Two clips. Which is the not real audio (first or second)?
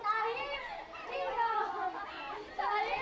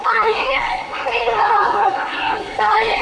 second